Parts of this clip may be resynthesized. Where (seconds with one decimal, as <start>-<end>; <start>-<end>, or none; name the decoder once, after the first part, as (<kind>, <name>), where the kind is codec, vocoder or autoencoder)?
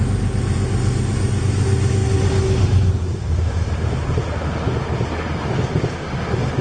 none